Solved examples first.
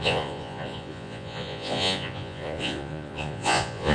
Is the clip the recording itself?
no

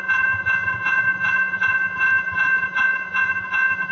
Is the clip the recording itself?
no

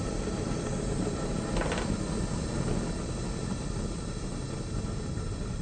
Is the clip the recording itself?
yes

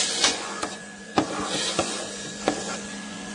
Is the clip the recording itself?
no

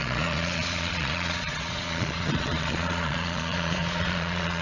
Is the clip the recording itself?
no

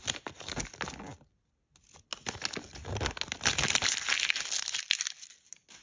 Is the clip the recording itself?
yes